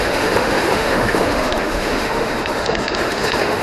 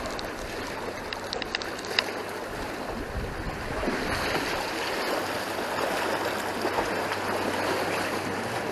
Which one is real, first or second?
second